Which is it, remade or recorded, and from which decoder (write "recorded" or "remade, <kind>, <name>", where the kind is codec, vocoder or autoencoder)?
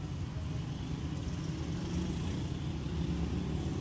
recorded